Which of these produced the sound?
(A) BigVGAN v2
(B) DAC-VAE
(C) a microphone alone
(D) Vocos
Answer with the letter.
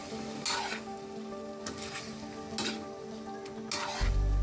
C